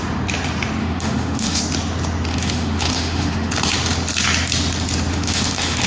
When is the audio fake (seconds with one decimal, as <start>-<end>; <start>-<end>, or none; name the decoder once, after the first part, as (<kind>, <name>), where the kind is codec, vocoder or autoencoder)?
0.8-1.6 (autoencoder, DAC-VAE); 2.3-3.5; 5.1-5.9